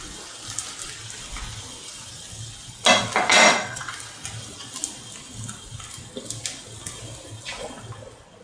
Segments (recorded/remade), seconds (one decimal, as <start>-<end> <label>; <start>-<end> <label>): 0.0-3.3 recorded; 3.3-3.9 remade; 3.9-8.4 recorded